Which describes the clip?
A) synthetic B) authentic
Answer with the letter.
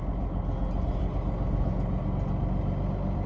B